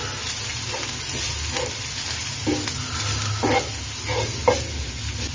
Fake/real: real